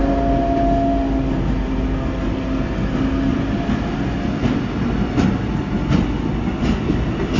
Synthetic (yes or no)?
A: no